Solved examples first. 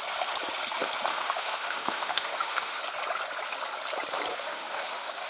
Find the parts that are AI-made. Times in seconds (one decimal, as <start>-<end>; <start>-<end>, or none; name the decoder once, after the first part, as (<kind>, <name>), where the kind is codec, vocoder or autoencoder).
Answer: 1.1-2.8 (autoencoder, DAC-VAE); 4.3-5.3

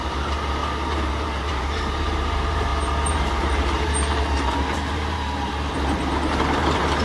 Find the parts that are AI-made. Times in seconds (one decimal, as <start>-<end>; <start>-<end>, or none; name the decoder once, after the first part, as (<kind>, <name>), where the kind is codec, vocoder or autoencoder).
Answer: 0.0-7.0 (vocoder, BigVGAN v2)

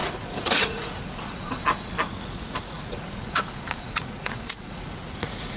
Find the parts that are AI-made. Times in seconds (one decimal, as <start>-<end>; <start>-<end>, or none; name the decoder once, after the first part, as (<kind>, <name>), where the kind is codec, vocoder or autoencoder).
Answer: 0.0-1.5 (vocoder, Vocos); 2.2-5.6

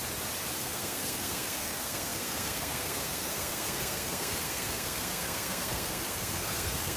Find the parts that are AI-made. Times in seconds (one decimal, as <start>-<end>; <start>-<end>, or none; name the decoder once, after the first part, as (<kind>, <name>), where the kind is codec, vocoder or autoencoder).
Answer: 0.6-7.0 (codec, SNAC)

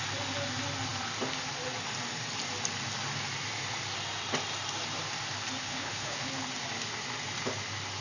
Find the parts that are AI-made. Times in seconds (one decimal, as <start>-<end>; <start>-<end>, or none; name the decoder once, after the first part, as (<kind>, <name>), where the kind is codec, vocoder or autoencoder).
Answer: 5.6-6.3 (codec, HILCodec)

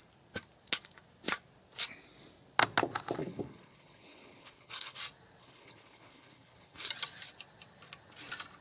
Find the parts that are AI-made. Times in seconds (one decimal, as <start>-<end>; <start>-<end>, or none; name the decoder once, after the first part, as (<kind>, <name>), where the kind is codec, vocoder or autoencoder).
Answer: 3.2-5.0 (codec, HILCodec); 5.4-6.9

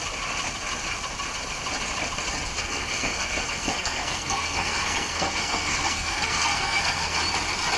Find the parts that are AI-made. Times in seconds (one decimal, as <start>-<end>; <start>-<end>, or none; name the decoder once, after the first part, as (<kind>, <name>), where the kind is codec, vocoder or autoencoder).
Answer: 2.6-7.2 (codec, SNAC)